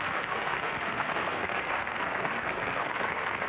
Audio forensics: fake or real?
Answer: fake